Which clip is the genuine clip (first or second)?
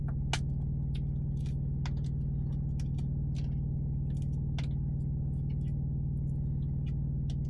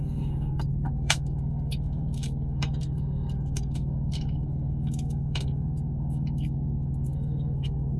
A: first